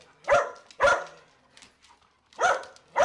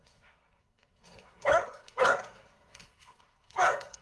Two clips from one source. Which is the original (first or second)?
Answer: first